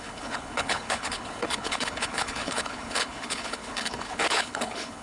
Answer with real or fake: fake